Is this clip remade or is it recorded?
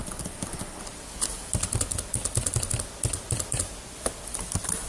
recorded